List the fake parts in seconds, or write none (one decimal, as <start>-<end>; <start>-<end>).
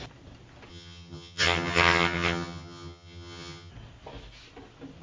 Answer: 0.7-3.7